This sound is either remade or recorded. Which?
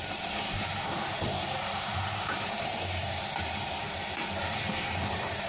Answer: remade